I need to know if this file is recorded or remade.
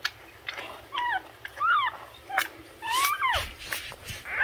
recorded